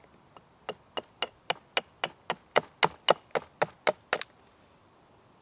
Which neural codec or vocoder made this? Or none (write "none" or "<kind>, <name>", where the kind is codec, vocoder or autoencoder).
none